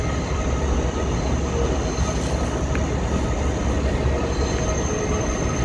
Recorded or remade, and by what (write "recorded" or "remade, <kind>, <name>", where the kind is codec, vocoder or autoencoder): recorded